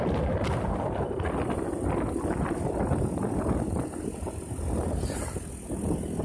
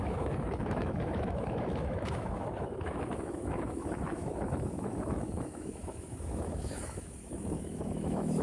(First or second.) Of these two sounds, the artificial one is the second